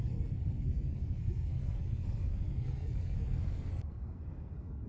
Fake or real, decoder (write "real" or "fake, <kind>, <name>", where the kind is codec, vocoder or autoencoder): fake, codec, SNAC